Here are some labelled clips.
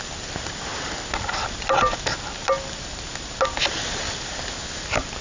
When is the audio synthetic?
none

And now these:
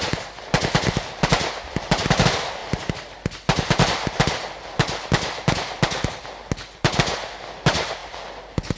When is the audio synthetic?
8.0-8.8 (vocoder, BigVGAN v2)

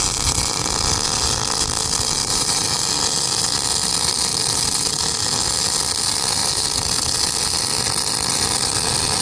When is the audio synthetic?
2.2-2.7 (vocoder, BigVGAN v2)

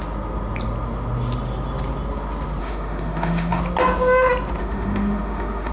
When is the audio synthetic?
2.6-3.6 (autoencoder, DAC-VAE); 4.6-5.7